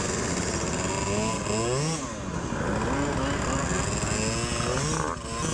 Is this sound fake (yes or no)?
no